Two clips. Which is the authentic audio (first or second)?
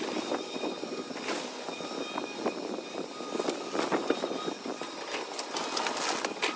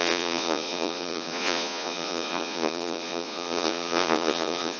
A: first